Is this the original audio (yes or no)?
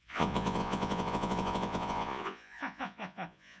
no